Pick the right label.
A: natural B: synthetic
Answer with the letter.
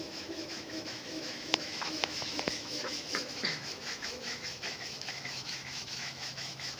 B